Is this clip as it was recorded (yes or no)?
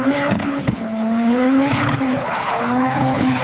no